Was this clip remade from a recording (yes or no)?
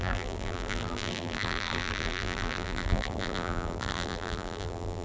yes